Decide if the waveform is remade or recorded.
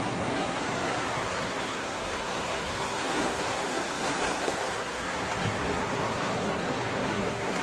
remade